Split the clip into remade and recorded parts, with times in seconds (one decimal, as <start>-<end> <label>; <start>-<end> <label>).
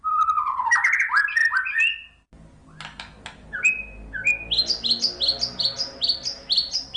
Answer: 0.0-7.0 recorded